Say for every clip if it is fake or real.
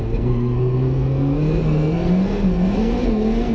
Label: fake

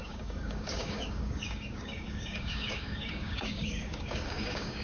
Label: fake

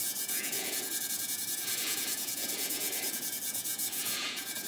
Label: fake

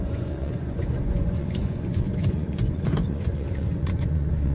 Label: fake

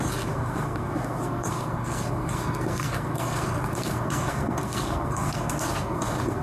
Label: fake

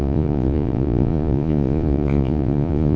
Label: fake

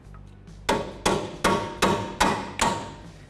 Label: real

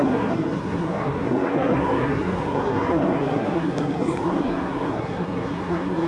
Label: fake